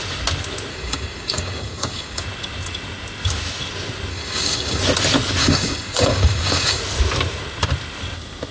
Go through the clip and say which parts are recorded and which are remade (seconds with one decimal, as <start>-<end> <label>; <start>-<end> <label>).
0.0-0.7 recorded; 0.7-2.2 remade; 2.2-4.1 recorded; 4.1-4.8 remade; 4.8-5.4 recorded; 5.4-6.8 remade; 6.8-8.5 recorded